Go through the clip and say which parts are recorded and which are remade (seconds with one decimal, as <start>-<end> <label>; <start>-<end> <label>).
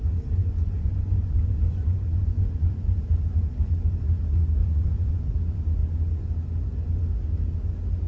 0.0-0.4 recorded; 0.4-3.0 remade; 3.0-4.6 recorded; 4.6-5.2 remade; 5.2-8.1 recorded